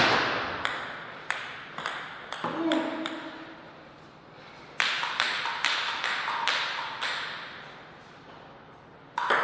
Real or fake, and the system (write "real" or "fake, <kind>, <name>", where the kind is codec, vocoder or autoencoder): real